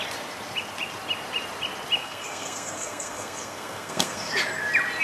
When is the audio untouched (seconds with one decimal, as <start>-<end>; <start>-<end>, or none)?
0.0-2.0; 4.3-5.0